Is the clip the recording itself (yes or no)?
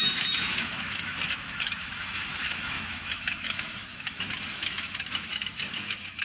no